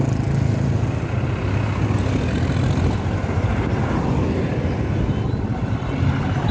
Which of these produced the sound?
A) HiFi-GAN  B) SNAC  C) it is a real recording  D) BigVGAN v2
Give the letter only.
C